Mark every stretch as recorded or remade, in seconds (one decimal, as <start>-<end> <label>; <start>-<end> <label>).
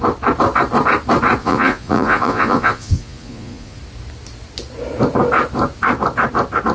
0.0-1.4 recorded; 1.4-3.8 remade; 3.8-6.7 recorded